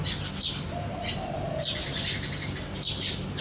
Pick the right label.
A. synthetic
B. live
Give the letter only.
B